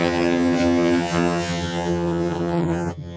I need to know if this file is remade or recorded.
remade